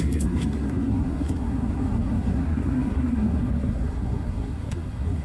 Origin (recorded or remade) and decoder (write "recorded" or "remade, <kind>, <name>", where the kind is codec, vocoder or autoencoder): remade, codec, SNAC